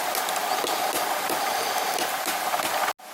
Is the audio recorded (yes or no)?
yes